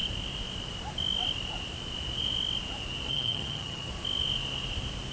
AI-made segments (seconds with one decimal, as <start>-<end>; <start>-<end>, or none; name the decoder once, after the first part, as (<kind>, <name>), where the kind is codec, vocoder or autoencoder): 3.1-3.9 (vocoder, HiFi-GAN)